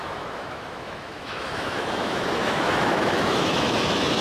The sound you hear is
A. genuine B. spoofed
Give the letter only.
B